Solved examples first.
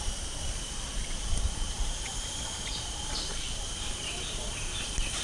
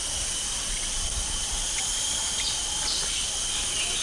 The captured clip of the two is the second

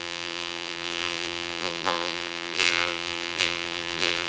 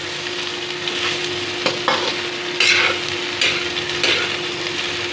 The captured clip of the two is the second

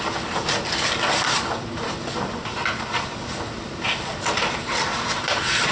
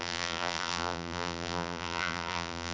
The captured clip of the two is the first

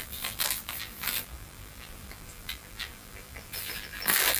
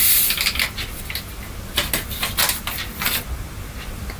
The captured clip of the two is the second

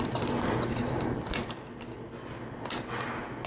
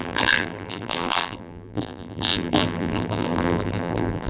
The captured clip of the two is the first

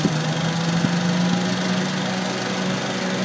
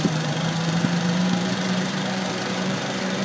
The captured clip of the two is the first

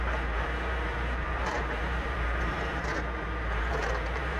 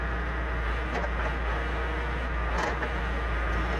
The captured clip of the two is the second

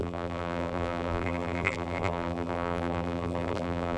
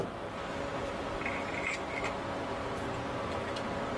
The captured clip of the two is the second